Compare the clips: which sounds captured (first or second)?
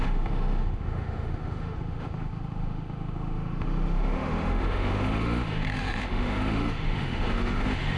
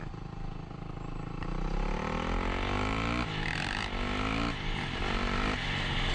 second